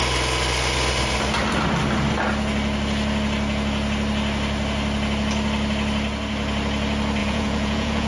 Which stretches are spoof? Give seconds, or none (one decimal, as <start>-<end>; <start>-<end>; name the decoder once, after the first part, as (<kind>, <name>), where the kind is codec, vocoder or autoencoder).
7.2-8.1 (vocoder, Vocos)